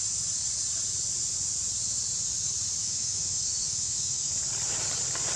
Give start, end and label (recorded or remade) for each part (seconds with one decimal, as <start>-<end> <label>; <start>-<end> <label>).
0.0-2.8 recorded; 2.8-4.3 remade; 4.3-5.4 recorded